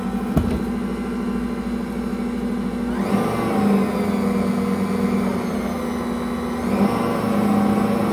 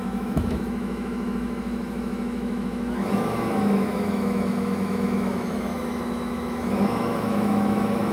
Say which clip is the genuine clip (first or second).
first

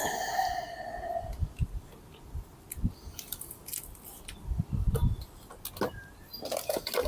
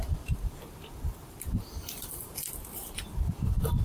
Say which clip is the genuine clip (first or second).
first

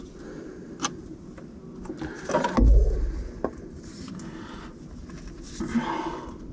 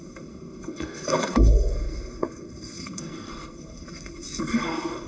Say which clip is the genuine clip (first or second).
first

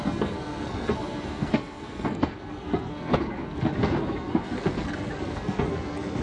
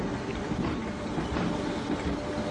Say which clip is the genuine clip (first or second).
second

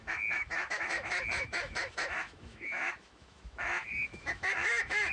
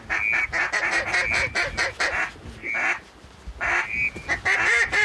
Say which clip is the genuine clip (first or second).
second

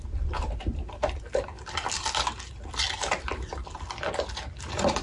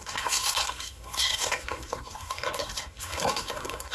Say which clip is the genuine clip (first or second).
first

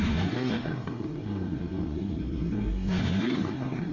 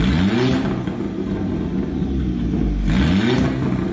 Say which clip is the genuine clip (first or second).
second